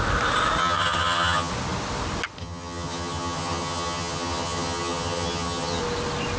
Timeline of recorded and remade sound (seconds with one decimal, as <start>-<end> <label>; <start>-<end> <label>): 0.0-0.6 recorded; 0.6-1.5 remade; 1.5-2.4 recorded; 2.4-5.8 remade; 5.8-6.4 recorded